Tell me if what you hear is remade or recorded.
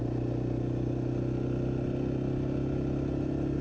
recorded